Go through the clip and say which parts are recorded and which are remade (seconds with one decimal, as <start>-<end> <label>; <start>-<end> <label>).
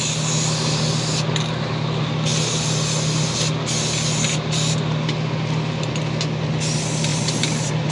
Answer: 0.0-7.1 recorded; 7.1-7.9 remade